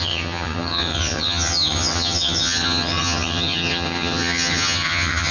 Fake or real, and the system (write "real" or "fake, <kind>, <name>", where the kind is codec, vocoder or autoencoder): fake, vocoder, HiFi-GAN